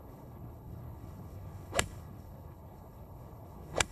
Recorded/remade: remade